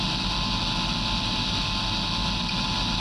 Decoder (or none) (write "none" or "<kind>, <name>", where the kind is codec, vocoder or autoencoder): none